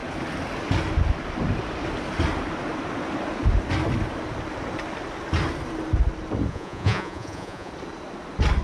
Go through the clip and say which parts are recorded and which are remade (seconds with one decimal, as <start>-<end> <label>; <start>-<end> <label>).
0.0-6.5 recorded; 6.5-7.7 remade; 7.7-8.6 recorded